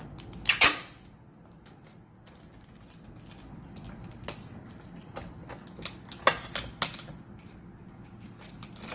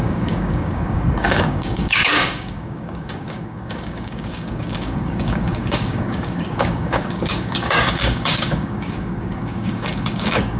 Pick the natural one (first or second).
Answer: first